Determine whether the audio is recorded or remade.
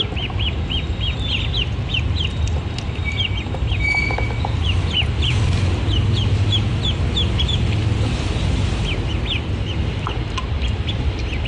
recorded